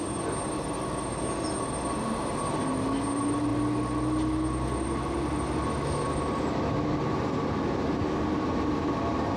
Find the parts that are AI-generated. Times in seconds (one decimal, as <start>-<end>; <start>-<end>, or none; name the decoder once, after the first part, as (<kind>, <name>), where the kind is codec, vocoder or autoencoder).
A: none